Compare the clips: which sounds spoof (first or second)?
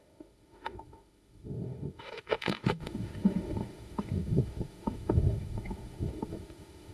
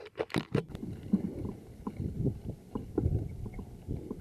first